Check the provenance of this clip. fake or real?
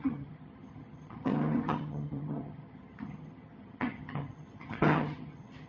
fake